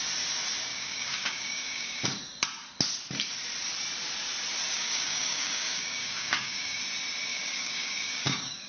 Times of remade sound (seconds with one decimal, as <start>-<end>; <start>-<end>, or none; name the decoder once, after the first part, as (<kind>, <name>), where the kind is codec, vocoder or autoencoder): 0.7-2.0 (codec, DAC); 4.7-6.8; 7.3-8.7